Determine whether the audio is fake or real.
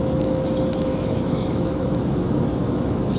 fake